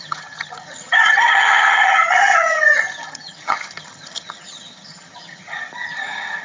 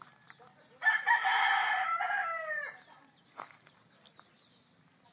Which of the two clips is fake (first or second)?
first